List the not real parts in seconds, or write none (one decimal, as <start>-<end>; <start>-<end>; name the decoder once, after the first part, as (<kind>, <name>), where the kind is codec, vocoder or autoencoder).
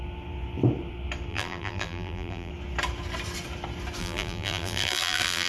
1.3-2.5 (vocoder, BigVGAN v2); 4.0-5.5